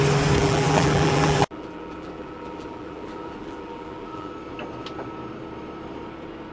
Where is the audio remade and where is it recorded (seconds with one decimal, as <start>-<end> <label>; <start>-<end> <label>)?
0.0-0.4 recorded; 0.4-4.3 remade; 4.3-6.5 recorded